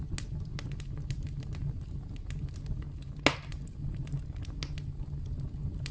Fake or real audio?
real